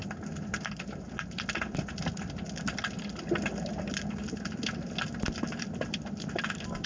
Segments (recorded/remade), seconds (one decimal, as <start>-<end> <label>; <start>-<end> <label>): 0.0-6.9 recorded